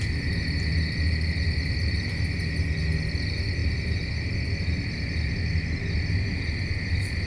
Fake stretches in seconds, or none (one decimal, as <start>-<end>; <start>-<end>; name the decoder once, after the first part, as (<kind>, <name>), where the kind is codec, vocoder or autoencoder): none